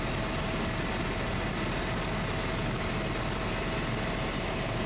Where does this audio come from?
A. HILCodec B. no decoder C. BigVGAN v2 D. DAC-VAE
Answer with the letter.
B